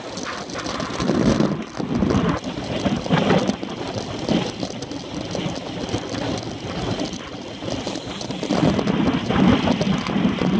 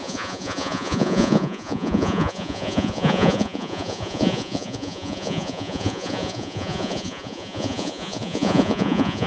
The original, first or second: first